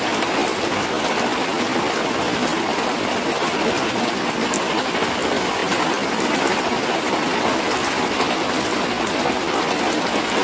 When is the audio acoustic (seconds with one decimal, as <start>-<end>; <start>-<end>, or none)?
1.5-2.6